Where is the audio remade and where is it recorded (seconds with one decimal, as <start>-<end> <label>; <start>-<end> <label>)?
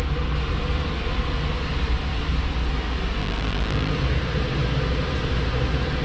0.0-3.2 recorded; 3.2-3.9 remade; 3.9-6.0 recorded